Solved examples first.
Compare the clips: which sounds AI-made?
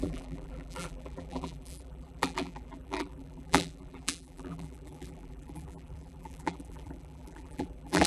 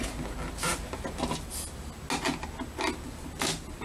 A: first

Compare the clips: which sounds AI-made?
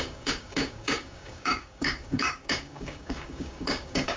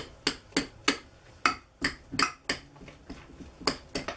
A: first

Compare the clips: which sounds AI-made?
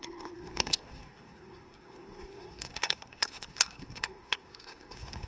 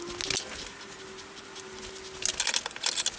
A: first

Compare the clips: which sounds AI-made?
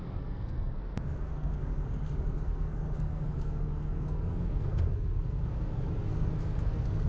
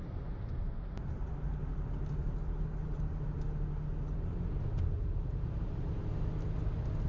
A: first